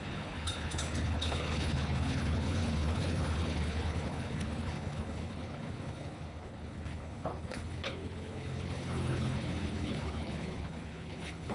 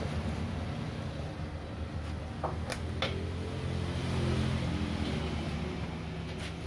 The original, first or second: second